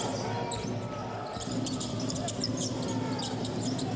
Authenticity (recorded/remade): recorded